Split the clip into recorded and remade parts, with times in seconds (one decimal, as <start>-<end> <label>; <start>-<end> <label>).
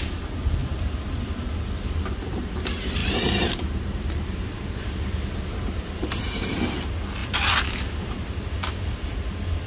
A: 0.0-3.0 recorded; 3.0-6.6 remade; 6.6-7.2 recorded; 7.2-8.0 remade; 8.0-9.7 recorded